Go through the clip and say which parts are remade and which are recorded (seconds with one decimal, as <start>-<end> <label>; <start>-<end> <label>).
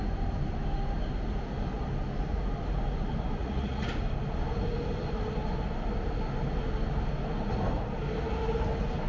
0.0-3.4 recorded; 3.4-3.9 remade; 3.9-9.1 recorded